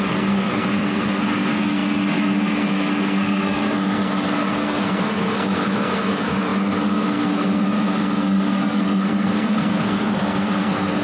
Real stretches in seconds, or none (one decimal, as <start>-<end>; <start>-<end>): none